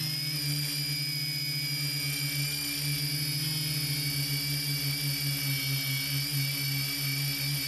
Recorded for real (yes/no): yes